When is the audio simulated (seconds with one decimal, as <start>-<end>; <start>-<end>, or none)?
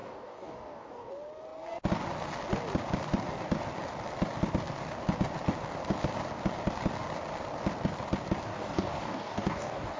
0.0-1.1; 8.5-10.0